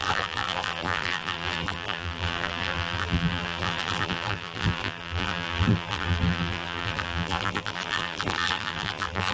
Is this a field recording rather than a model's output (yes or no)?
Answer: no